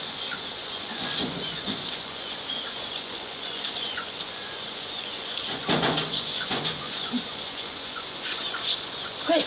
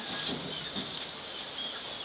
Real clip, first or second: second